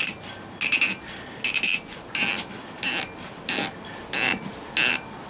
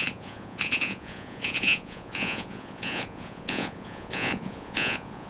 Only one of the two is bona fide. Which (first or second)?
first